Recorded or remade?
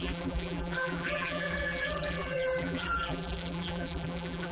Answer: remade